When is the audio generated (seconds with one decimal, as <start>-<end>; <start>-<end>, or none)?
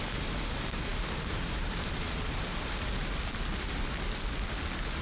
0.0-3.0